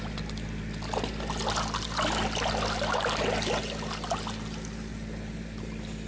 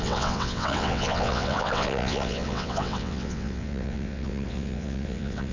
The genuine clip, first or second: first